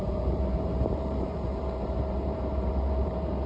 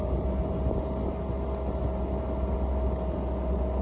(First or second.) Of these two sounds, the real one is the second